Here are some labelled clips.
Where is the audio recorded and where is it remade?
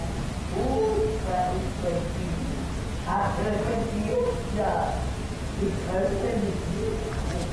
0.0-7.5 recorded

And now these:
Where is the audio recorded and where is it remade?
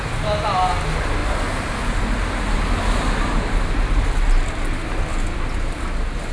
0.0-6.3 recorded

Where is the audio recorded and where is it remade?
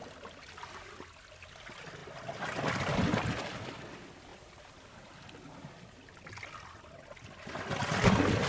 0.0-8.5 recorded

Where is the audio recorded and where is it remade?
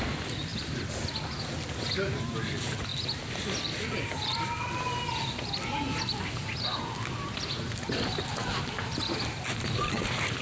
0.0-0.5 recorded; 0.5-1.5 remade; 1.5-10.4 recorded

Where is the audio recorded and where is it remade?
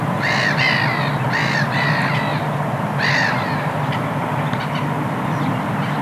0.0-6.0 recorded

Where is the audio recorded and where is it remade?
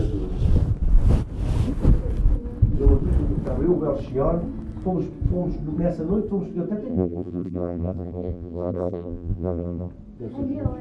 0.0-6.9 recorded; 6.9-9.9 remade; 9.9-10.8 recorded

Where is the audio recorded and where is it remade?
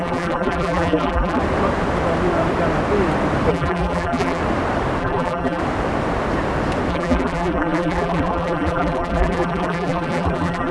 0.0-1.4 remade; 1.4-3.5 recorded; 3.5-4.4 remade; 4.4-5.0 recorded; 5.0-5.6 remade; 5.6-6.9 recorded; 6.9-10.7 remade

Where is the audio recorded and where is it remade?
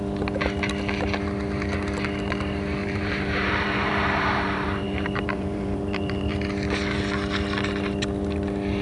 0.0-2.8 recorded; 2.8-6.3 remade; 6.3-8.8 recorded